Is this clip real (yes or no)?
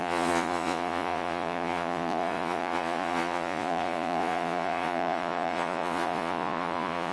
no